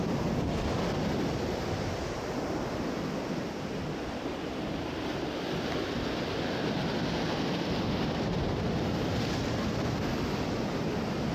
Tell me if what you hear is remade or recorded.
recorded